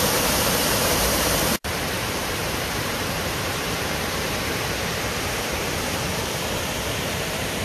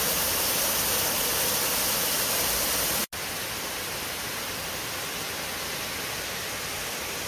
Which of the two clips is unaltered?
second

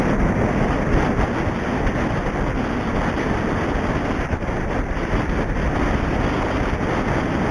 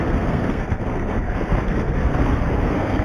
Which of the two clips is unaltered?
first